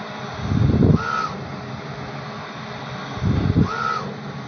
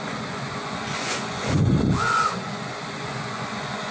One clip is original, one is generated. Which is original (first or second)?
first